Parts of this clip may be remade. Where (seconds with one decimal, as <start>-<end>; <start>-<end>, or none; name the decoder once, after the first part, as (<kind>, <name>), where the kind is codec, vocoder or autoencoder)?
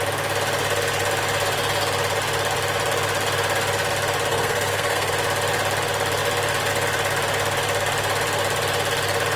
4.3-5.1 (codec, SNAC)